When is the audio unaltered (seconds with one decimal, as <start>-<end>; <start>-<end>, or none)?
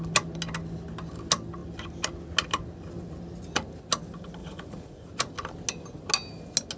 0.0-4.4; 5.1-6.8